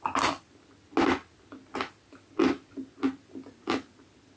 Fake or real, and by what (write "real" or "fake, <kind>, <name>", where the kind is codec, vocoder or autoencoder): real